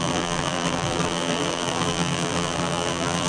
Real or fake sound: fake